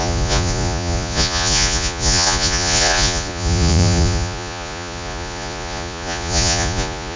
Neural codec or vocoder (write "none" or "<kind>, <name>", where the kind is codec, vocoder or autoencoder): vocoder, Vocos